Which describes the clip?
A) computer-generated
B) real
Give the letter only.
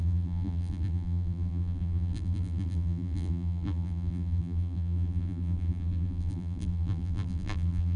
A